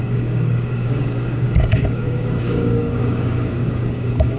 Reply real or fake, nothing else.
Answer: fake